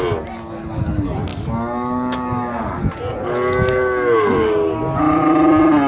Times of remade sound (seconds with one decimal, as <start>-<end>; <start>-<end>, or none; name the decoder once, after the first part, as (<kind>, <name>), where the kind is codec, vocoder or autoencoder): 1.3-2.8 (codec, DAC); 3.2-4.8